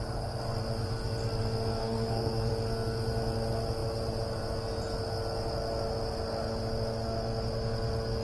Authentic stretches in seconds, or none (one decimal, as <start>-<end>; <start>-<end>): 0.0-1.8; 2.5-8.2